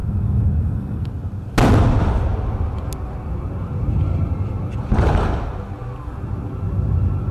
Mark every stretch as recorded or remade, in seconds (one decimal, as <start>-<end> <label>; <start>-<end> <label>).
0.0-1.1 remade; 1.1-7.3 recorded